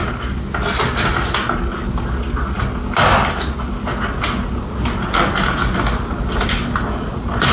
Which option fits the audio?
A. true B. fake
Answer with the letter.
A